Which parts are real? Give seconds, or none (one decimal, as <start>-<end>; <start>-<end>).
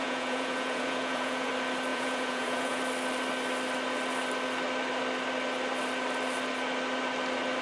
1.5-1.9; 2.8-7.6